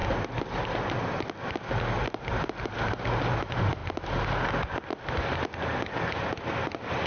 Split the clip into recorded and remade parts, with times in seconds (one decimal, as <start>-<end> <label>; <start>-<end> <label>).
0.0-7.1 recorded